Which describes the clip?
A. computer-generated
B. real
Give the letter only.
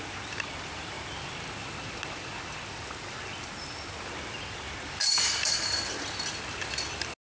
B